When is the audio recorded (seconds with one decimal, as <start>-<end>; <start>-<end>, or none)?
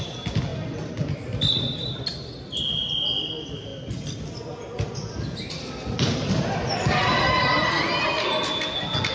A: 0.0-9.1